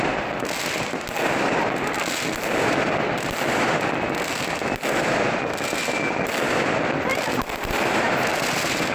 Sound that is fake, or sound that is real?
real